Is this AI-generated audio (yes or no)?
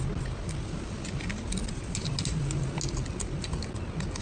no